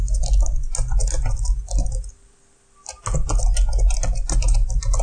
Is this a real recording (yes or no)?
yes